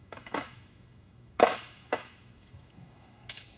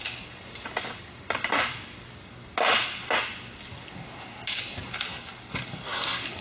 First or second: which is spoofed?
first